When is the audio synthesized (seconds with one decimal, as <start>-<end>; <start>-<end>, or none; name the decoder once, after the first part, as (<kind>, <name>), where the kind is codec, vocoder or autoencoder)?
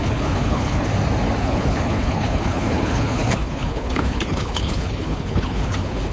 0.0-0.9 (codec, HILCodec); 1.4-6.1